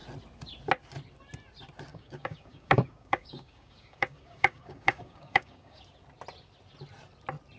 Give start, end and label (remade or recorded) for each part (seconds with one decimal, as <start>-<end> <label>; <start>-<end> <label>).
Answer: 0.0-1.9 recorded; 1.9-5.8 remade; 5.8-7.6 recorded